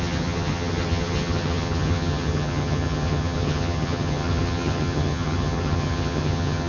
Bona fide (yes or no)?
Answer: no